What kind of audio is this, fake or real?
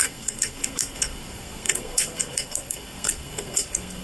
fake